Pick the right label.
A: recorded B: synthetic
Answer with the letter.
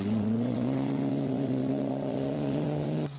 B